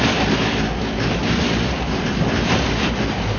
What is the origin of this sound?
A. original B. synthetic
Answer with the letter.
B